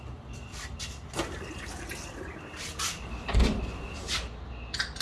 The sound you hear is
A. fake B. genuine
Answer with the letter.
B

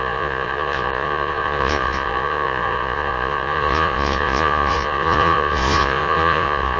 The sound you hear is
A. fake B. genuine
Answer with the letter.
A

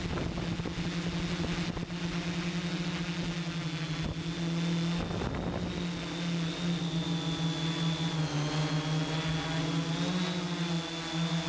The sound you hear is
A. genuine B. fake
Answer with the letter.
A